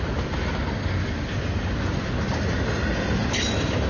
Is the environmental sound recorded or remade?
recorded